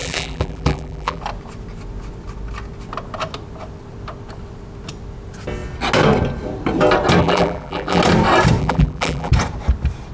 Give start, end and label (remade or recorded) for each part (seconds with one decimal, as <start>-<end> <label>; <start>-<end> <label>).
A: 0.0-1.2 remade; 1.2-7.2 recorded; 7.2-8.0 remade; 8.0-8.6 recorded; 8.6-9.3 remade; 9.3-10.1 recorded